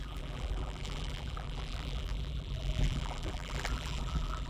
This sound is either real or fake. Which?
fake